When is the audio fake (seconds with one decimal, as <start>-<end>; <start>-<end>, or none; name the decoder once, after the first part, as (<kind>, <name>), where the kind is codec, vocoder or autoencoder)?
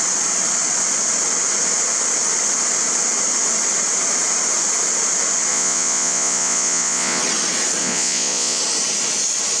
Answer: 5.5-7.2 (vocoder, Vocos); 7.8-8.6